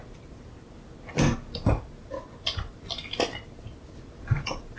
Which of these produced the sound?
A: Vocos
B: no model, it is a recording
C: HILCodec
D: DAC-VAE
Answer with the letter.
B